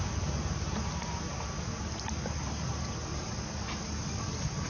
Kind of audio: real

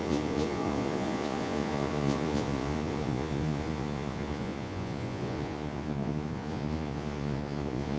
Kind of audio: fake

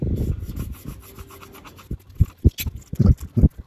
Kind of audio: real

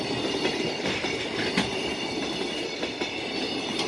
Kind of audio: real